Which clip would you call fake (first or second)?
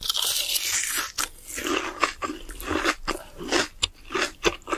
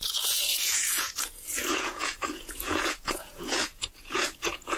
second